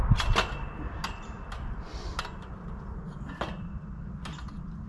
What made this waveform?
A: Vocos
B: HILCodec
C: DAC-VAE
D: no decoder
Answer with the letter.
D